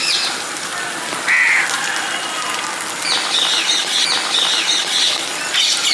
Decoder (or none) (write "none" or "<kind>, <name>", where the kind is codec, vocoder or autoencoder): none